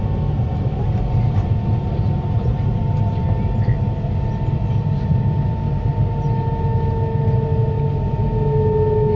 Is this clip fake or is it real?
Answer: real